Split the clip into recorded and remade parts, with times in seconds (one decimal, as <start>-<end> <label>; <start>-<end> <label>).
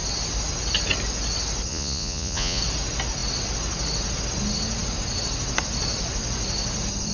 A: 0.0-1.7 recorded; 1.7-2.6 remade; 2.6-7.1 recorded